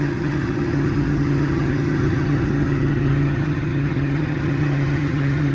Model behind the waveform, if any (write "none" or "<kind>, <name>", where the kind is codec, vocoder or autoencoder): vocoder, HiFi-GAN